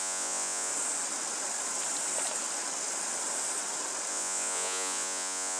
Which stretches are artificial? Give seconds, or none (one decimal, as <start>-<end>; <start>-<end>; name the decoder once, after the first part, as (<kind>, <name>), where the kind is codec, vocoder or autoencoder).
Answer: 0.0-0.7 (vocoder, Vocos); 4.1-5.6